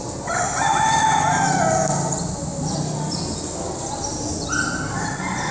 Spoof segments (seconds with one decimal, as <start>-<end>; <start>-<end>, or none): none